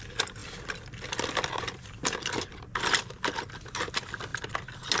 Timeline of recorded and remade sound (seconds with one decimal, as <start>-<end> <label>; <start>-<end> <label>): 0.0-5.0 recorded